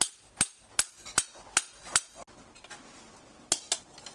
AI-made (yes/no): no